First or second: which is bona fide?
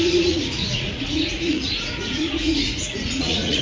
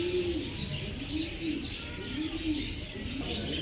second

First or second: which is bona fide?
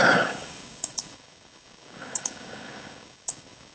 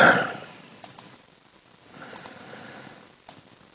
second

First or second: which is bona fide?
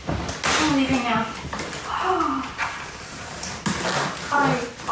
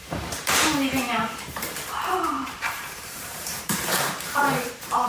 first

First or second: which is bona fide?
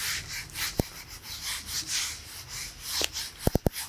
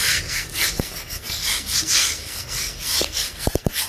first